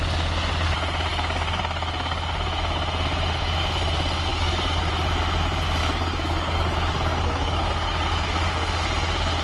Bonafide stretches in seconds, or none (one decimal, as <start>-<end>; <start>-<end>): 0.0-1.1; 1.6-4.3; 4.9-5.8; 8.5-9.4